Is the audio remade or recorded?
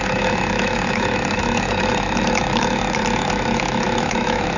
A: remade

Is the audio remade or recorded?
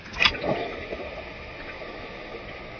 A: recorded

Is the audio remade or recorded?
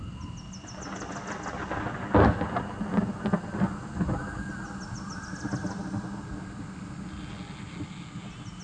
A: recorded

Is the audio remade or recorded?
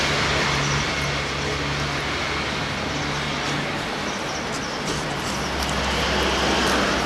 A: recorded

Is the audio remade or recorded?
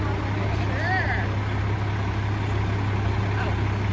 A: recorded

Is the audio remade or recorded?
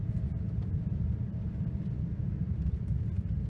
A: recorded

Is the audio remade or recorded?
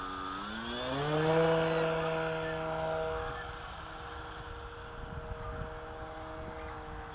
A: recorded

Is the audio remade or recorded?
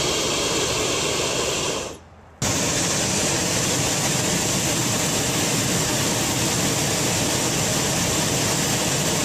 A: recorded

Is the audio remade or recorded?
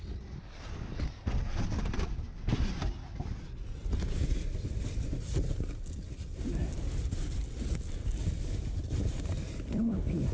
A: remade